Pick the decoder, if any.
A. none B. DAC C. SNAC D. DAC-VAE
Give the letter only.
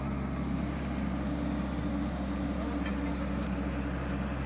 A